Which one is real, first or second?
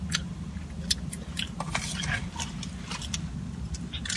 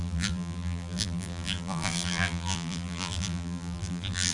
first